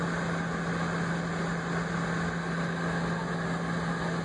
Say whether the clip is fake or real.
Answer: real